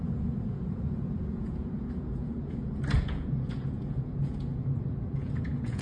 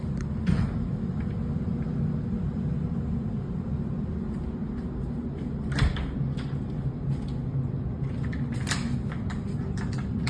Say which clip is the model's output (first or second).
first